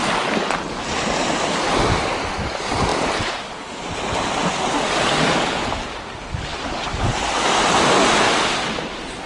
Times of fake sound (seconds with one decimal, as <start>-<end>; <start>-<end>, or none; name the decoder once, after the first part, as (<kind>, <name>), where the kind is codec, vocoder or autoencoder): none